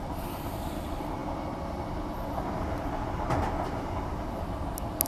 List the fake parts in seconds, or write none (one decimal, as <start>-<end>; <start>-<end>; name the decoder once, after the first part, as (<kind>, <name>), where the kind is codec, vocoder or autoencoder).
none